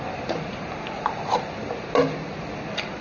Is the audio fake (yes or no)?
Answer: no